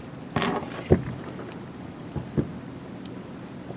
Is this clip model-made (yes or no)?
no